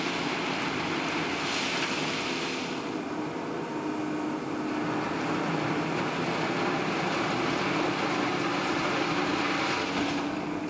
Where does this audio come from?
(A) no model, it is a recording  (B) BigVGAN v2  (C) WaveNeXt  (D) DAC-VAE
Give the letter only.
A